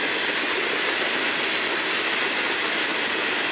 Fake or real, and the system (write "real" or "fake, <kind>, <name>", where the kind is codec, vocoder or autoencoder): real